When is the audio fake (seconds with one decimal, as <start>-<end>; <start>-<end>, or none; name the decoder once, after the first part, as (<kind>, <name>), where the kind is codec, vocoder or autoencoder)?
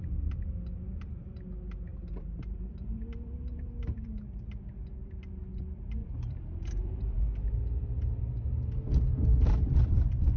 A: 1.9-4.5 (vocoder, BigVGAN v2); 5.0-5.6; 6.0-7.5